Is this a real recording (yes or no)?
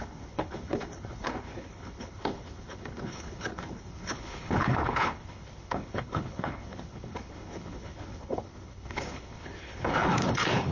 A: no